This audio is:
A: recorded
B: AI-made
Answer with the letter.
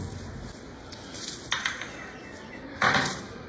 A